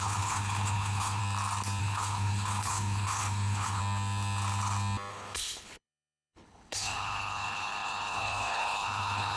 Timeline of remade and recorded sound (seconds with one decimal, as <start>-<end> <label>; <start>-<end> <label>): 0.0-1.2 remade; 1.2-1.8 recorded; 1.8-3.8 remade; 3.8-5.1 recorded; 5.1-9.4 remade